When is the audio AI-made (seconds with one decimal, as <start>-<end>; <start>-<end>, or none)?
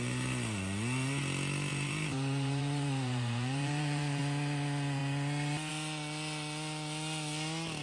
1.7-4.2